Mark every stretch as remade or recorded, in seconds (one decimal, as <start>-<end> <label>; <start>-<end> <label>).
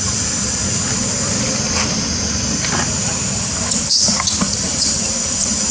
0.0-0.6 remade; 0.6-3.8 recorded; 3.8-5.7 remade